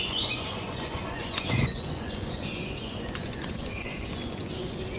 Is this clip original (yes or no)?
no